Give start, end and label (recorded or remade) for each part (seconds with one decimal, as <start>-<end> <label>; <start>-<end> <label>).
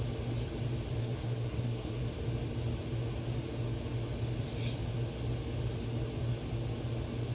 0.0-1.0 recorded; 1.0-2.0 remade; 2.0-7.3 recorded